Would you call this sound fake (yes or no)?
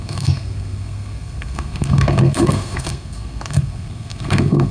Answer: yes